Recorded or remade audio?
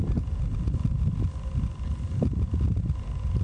recorded